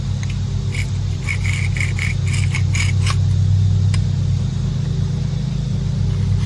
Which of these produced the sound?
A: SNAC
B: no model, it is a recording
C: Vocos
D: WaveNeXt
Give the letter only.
B